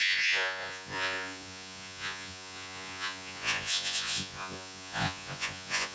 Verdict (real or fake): fake